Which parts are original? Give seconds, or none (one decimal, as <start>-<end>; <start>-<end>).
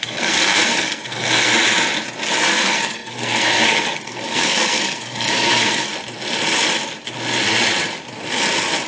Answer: 1.5-2.4; 5.9-8.9